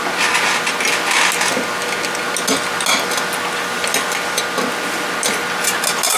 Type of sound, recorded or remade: recorded